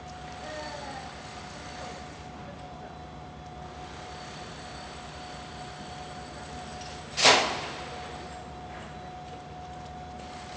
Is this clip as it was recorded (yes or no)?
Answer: yes